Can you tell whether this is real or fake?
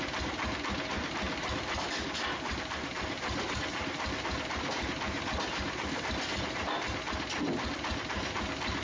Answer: real